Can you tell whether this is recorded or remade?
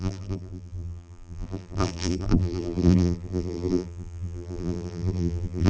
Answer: remade